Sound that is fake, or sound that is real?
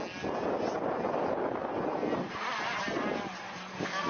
real